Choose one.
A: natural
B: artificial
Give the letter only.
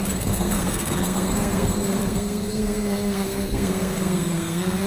B